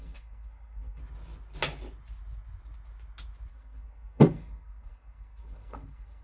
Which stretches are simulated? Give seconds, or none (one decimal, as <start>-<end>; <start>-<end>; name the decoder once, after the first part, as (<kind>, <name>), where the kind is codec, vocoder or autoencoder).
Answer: 0.0-1.0 (codec, SNAC); 3.5-6.2